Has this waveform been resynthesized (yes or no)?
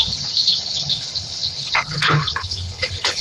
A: yes